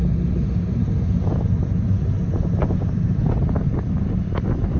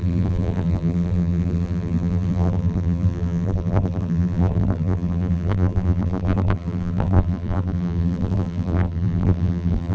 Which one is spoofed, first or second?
second